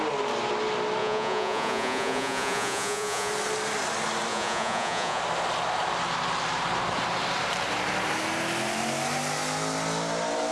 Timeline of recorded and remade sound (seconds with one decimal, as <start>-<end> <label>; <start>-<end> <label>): 0.0-1.0 recorded; 1.0-3.3 remade; 3.3-4.3 recorded; 4.3-5.2 remade; 5.2-10.5 recorded